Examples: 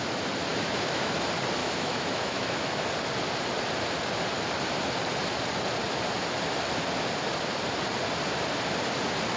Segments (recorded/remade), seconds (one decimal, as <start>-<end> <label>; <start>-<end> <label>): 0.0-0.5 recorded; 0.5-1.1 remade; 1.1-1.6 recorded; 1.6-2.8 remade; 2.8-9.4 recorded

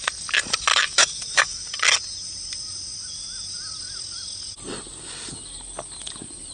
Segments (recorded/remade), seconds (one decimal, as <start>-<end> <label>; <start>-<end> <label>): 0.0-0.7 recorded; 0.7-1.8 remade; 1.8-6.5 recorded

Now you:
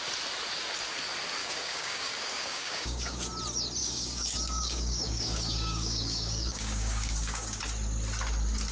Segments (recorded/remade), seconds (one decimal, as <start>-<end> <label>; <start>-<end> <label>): 0.0-1.4 recorded; 1.4-3.2 remade; 3.2-3.8 recorded; 3.8-7.6 remade; 7.6-8.7 recorded

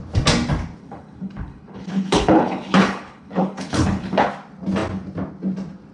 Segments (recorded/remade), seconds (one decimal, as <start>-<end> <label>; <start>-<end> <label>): 0.0-0.8 recorded; 0.8-4.3 remade; 4.3-5.9 recorded